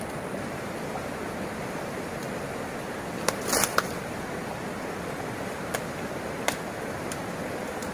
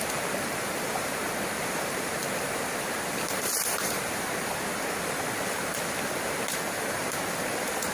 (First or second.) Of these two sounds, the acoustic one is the first